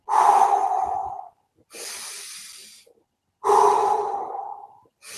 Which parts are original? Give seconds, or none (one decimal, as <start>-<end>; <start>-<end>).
0.0-5.2